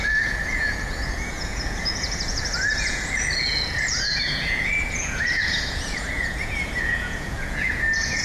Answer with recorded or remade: remade